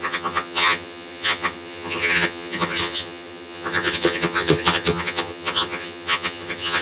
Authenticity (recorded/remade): remade